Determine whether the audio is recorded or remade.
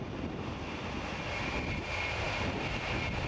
recorded